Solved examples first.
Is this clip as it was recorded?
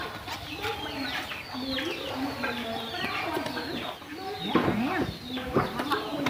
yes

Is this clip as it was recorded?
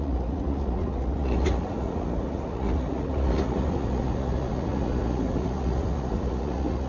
no